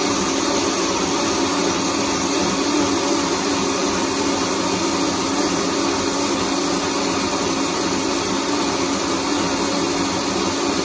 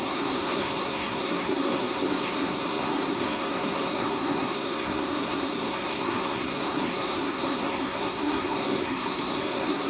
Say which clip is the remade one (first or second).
second